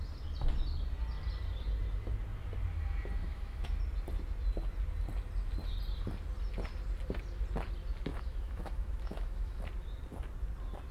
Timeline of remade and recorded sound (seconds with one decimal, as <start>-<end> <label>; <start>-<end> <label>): 0.0-3.2 recorded; 3.2-3.8 remade; 3.8-8.1 recorded; 8.1-9.6 remade; 9.6-10.9 recorded